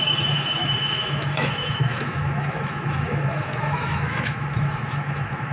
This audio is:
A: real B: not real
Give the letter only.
B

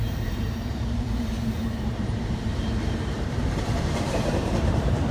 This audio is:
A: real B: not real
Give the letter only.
B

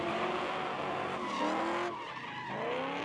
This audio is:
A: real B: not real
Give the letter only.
A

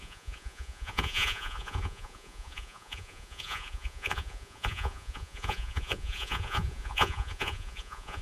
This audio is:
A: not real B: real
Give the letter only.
A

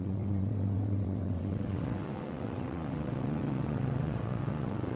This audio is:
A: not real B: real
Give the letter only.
A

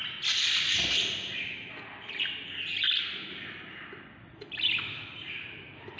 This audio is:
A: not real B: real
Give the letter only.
B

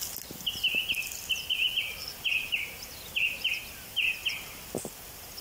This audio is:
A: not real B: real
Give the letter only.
B